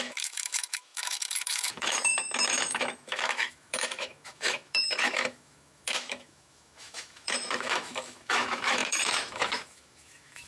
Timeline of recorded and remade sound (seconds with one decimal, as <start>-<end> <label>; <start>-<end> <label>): 0.0-10.5 remade